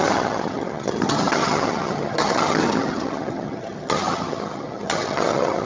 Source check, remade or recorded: remade